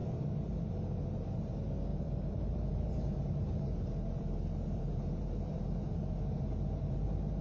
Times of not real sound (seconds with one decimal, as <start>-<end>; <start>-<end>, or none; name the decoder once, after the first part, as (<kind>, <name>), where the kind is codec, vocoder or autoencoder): 1.9-5.6 (vocoder, BigVGAN v2)